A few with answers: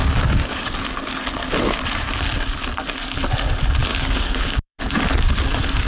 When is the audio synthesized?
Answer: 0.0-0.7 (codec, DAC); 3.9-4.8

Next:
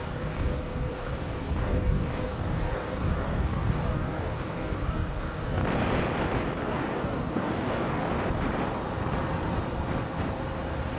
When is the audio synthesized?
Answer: 0.0-5.6 (codec, DAC); 6.6-8.0

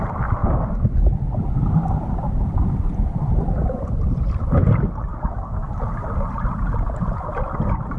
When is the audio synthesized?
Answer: 5.1-5.7 (codec, DAC)

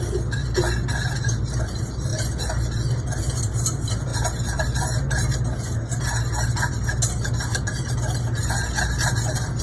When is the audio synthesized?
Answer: none